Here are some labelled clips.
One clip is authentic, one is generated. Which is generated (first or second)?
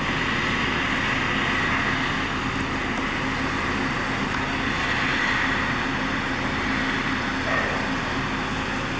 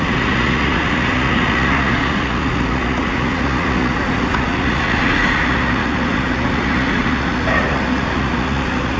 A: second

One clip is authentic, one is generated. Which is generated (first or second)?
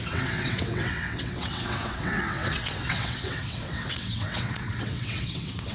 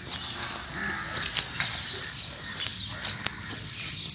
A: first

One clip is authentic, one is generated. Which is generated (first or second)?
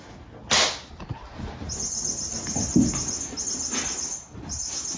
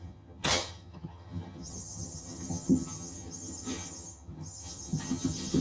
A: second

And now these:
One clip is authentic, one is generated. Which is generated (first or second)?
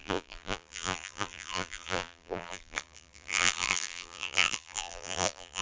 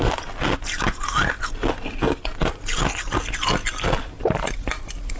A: first